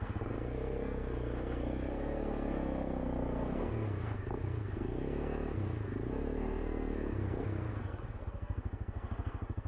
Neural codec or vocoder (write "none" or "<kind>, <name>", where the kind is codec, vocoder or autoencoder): codec, SNAC